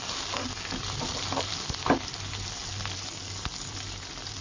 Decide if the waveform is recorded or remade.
recorded